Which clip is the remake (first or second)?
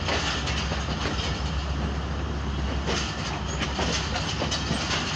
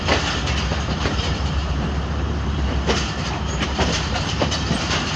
second